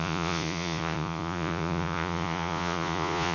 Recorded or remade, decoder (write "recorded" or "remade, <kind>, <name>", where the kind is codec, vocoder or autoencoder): remade, vocoder, Vocos